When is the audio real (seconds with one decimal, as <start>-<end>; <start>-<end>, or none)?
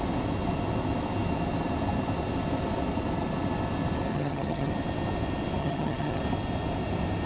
0.0-4.1; 4.7-5.6; 6.2-7.3